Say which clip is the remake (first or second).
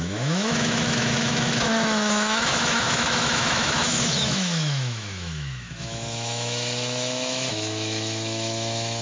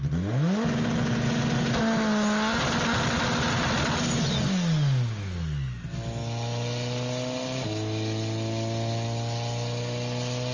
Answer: first